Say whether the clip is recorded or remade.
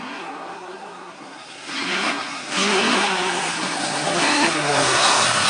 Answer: remade